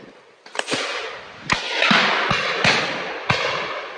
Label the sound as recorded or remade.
recorded